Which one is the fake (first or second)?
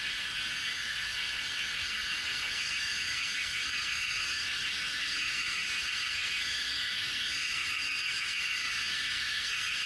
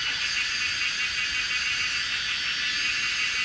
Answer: first